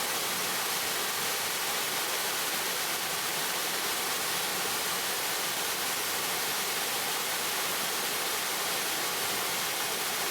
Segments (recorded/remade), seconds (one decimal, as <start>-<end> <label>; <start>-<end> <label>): 0.0-2.5 recorded; 2.5-3.8 remade; 3.8-10.3 recorded